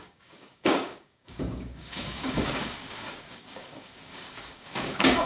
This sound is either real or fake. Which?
fake